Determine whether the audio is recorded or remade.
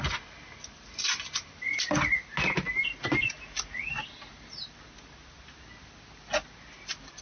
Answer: recorded